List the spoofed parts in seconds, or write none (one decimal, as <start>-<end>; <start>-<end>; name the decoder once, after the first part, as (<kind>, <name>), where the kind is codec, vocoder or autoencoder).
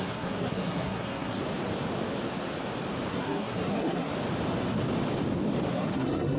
0.0-1.4 (codec, SNAC); 3.1-4.1; 5.7-6.4